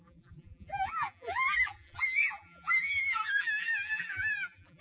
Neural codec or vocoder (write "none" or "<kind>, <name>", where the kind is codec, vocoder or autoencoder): vocoder, BigVGAN v2